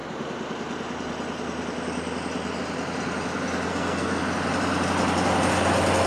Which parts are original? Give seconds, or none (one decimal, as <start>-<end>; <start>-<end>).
0.0-3.7; 4.2-6.1